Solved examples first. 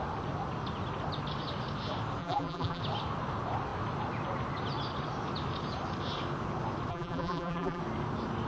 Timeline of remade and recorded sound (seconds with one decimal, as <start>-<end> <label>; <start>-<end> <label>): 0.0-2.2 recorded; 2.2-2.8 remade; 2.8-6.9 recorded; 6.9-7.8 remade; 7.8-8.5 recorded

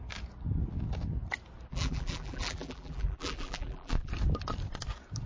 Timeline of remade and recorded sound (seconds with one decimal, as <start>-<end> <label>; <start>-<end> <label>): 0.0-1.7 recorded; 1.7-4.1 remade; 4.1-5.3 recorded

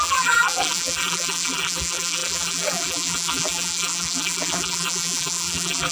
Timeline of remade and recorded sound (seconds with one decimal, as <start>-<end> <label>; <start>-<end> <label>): 0.0-5.9 remade

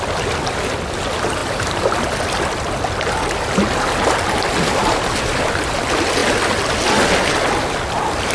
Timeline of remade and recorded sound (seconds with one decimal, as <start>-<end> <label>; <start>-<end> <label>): 0.0-1.4 recorded; 1.4-1.9 remade; 1.9-8.3 recorded

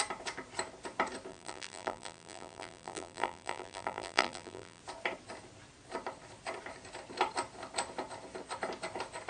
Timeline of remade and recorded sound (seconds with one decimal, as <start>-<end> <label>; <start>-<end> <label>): 0.0-1.3 recorded; 1.3-4.8 remade; 4.8-9.3 recorded

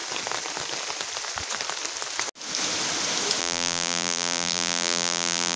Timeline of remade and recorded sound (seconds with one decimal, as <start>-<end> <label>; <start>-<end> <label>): 0.0-3.4 recorded; 3.4-5.6 remade